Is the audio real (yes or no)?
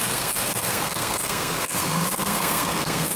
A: no